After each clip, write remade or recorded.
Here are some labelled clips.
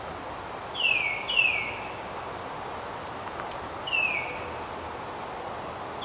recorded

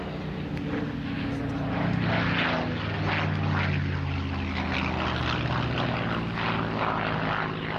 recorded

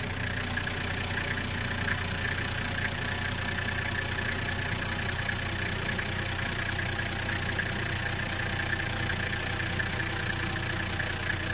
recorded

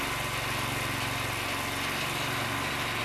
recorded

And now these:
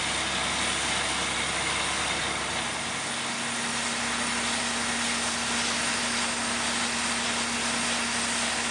recorded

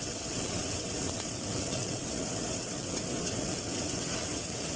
remade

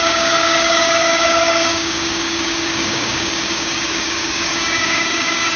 remade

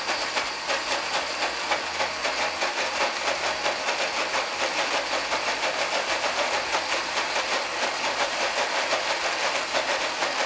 recorded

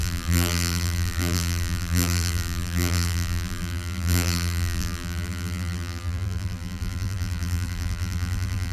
remade